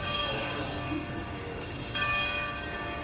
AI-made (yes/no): yes